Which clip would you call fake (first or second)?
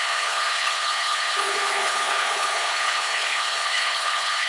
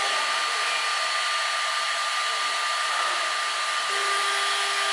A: first